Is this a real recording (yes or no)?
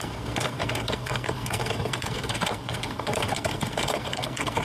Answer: no